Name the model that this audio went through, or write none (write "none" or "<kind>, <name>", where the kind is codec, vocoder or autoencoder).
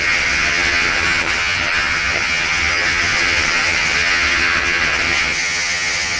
vocoder, HiFi-GAN